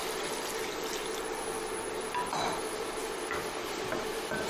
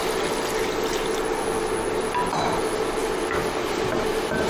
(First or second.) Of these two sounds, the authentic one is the second